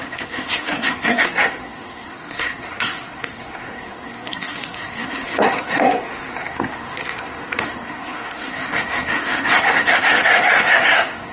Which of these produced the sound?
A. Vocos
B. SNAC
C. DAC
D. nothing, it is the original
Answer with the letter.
B